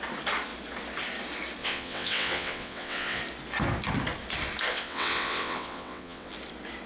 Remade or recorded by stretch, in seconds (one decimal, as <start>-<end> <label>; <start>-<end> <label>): 0.0-1.6 recorded; 1.6-3.2 remade; 3.2-4.7 recorded; 4.7-6.3 remade; 6.3-6.9 recorded